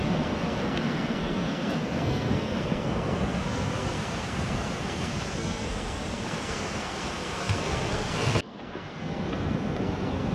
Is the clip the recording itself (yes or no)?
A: no